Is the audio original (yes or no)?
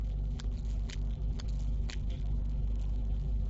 no